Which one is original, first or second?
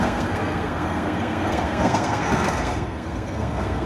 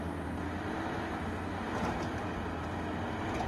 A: second